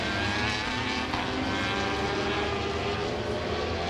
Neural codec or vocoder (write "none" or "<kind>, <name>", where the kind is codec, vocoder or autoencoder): none